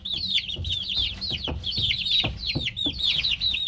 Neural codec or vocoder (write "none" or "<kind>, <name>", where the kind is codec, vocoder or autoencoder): none